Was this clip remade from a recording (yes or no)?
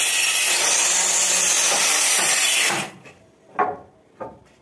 no